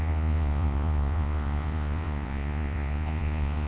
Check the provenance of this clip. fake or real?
fake